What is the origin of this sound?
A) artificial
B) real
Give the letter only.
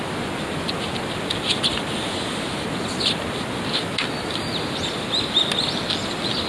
B